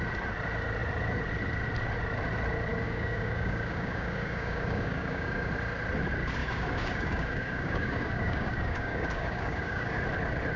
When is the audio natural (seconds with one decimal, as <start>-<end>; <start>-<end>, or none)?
0.0-2.7; 5.5-6.4; 10.0-10.6